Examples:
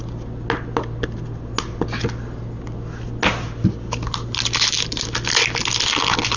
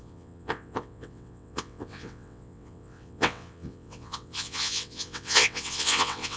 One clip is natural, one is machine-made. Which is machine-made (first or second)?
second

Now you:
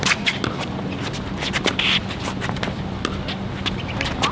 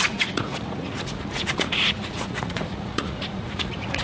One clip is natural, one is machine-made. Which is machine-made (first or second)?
second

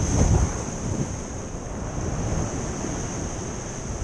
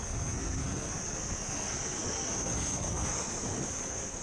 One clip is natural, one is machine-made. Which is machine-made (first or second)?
second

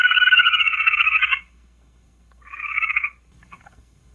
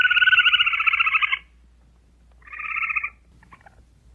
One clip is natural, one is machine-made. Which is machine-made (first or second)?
first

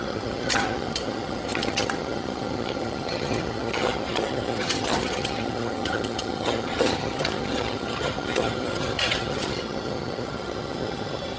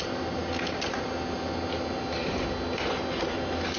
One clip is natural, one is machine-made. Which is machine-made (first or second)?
first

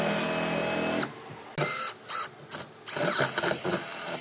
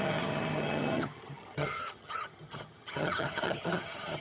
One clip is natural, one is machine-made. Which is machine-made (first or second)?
second